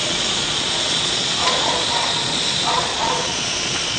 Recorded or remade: remade